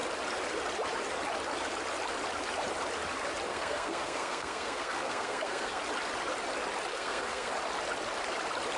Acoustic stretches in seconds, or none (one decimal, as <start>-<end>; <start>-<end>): 0.0-3.5; 5.8-6.9; 7.5-8.8